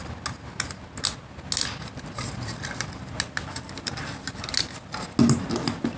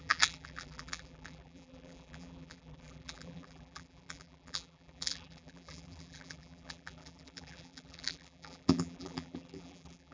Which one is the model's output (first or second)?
second